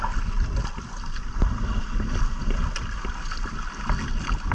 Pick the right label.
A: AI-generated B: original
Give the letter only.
B